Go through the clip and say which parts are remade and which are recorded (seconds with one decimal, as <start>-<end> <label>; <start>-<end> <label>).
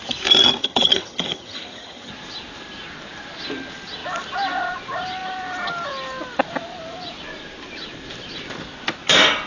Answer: 0.0-0.6 recorded; 0.6-2.1 remade; 2.1-9.5 recorded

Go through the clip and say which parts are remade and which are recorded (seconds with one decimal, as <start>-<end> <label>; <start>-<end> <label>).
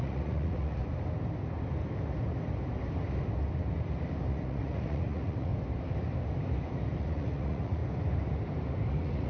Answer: 0.0-0.8 remade; 0.8-4.3 recorded; 4.3-5.5 remade; 5.5-7.0 recorded; 7.0-7.8 remade; 7.8-8.9 recorded; 8.9-9.3 remade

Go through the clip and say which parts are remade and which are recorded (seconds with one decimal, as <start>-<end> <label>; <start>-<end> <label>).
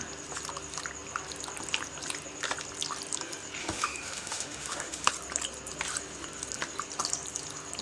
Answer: 0.0-3.6 recorded; 3.6-5.1 remade; 5.1-7.8 recorded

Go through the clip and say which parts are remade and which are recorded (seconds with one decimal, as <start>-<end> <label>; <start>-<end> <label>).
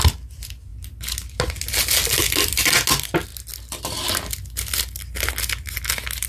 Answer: 0.0-6.3 recorded